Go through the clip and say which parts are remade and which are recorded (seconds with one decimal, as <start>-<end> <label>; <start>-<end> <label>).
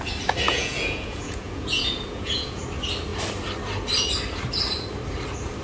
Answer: 0.0-0.5 recorded; 0.5-2.6 remade; 2.6-5.6 recorded